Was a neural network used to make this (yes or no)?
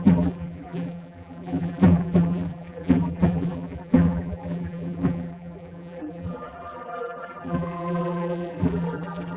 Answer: yes